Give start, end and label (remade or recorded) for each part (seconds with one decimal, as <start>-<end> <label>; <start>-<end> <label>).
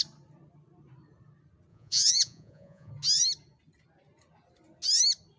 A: 0.0-1.7 recorded; 1.7-2.9 remade; 2.9-5.4 recorded